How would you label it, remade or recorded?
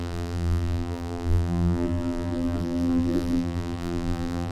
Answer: remade